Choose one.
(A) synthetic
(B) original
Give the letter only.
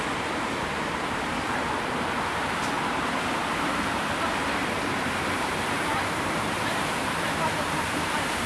A